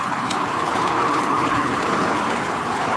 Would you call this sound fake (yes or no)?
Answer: yes